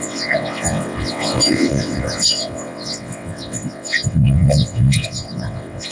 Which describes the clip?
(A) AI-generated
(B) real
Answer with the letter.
A